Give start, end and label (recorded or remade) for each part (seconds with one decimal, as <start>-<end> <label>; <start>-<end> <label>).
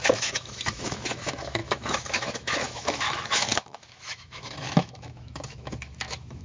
0.0-6.4 remade